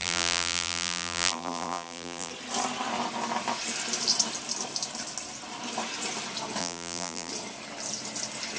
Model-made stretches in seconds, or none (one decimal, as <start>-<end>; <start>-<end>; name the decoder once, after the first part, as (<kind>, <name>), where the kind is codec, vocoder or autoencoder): 0.0-2.3 (vocoder, BigVGAN v2); 6.6-7.3